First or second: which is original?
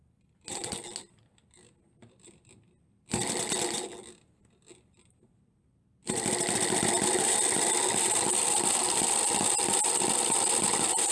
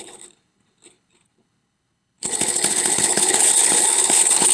first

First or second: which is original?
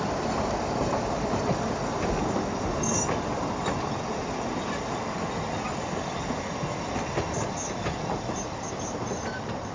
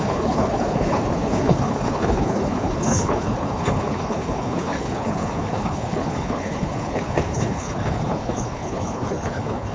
first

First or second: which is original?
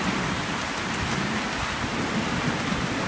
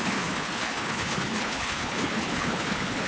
first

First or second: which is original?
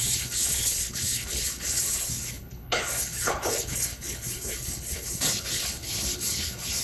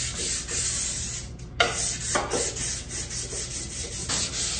second